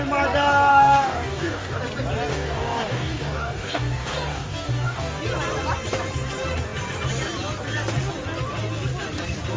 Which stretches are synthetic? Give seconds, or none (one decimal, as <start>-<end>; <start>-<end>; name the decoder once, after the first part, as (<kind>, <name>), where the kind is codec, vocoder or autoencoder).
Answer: 0.7-1.8 (codec, DAC); 2.3-5.2